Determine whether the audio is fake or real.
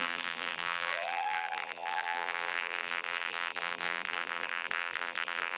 fake